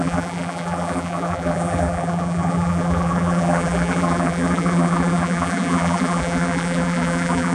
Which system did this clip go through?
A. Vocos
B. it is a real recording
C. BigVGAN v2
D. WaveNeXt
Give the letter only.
C